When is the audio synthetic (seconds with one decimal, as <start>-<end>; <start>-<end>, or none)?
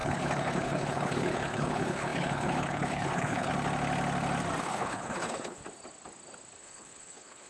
0.0-3.5; 4.6-5.6; 6.6-7.5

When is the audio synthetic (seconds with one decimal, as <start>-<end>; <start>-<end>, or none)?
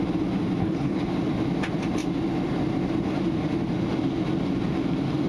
0.6-1.1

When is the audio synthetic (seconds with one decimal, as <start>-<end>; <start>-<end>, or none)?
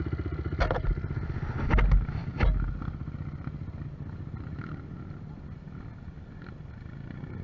none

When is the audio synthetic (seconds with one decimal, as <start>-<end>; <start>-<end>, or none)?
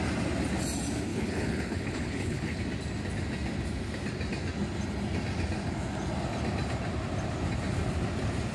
1.1-2.6